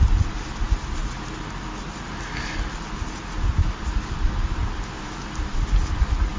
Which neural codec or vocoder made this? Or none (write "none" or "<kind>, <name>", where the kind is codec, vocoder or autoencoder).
none